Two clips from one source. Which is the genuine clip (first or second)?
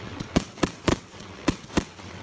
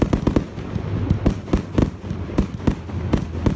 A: second